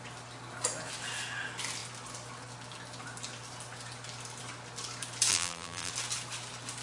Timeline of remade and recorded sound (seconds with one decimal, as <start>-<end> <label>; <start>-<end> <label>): 0.0-5.3 recorded; 5.3-5.9 remade; 5.9-6.8 recorded